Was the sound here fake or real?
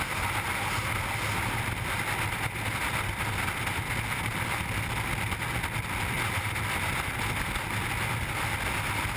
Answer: real